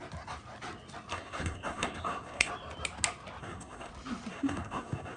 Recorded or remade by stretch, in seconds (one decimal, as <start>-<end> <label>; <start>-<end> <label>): 0.0-1.1 recorded; 1.1-2.5 remade; 2.5-3.4 recorded; 3.4-3.9 remade; 3.9-4.3 recorded; 4.3-5.2 remade